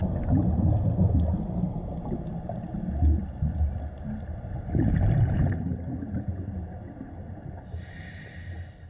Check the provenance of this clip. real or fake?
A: real